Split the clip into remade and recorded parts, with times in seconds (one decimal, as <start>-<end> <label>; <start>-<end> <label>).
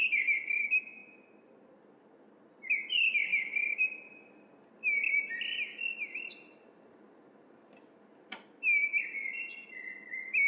0.0-10.5 recorded